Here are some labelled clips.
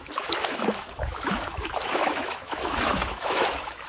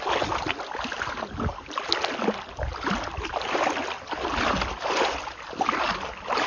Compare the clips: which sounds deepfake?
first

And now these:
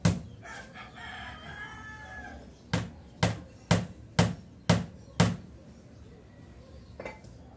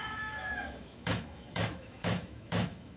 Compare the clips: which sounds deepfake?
second